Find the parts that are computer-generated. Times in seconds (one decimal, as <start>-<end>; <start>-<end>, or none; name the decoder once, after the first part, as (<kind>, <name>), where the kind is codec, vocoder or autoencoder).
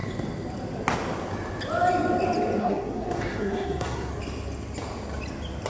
2.6-4.1 (codec, SNAC)